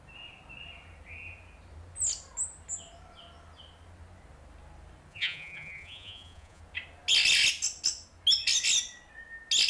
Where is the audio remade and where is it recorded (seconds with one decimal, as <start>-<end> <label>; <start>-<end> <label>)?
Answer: 0.0-5.1 recorded; 5.1-6.6 remade; 6.6-9.7 recorded